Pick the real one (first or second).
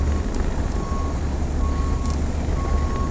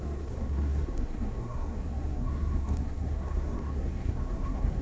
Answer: first